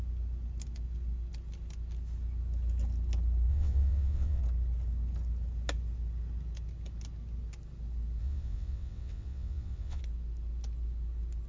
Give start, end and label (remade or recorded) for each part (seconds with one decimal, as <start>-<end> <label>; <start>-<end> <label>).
0.0-3.5 recorded; 3.5-4.4 remade; 4.4-8.2 recorded; 8.2-10.0 remade; 10.0-11.5 recorded